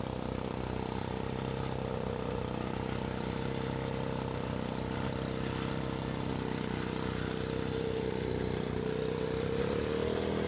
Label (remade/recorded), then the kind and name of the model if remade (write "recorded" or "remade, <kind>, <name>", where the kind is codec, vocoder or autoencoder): recorded